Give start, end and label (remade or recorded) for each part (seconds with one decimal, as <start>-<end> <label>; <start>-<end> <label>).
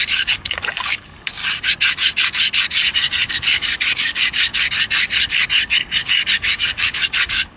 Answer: 0.0-1.4 remade; 1.4-3.3 recorded; 3.3-4.5 remade; 4.5-6.3 recorded; 6.3-7.6 remade